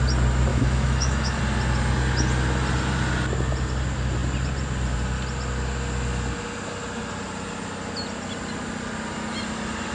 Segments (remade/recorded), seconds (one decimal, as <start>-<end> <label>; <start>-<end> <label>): 0.0-0.5 recorded; 0.5-1.4 remade; 1.4-9.9 recorded